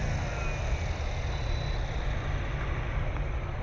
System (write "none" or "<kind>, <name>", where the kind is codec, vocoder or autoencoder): none